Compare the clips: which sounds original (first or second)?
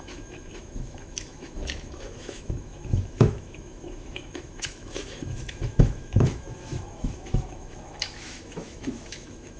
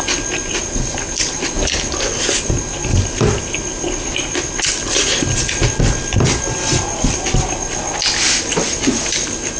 second